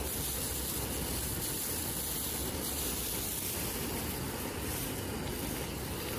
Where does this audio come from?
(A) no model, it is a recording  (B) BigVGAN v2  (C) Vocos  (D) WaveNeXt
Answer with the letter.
A